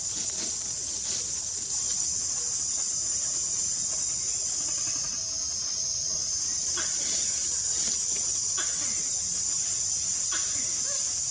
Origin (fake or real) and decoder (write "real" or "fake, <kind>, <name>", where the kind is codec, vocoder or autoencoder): real